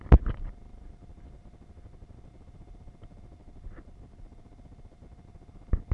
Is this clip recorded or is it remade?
recorded